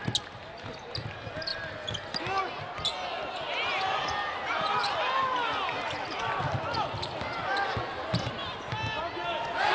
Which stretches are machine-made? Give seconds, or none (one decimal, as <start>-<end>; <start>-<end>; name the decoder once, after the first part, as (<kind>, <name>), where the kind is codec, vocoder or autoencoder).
none

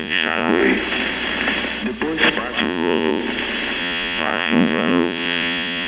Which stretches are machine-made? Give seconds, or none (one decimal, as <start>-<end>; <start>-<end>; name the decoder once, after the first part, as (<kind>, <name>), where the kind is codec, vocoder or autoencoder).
0.0-0.6 (vocoder, Vocos); 2.6-3.2; 3.8-5.9